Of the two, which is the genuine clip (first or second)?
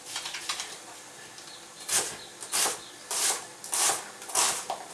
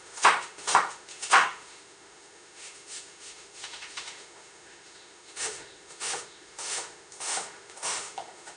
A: first